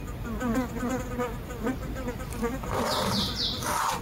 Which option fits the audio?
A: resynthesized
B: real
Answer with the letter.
B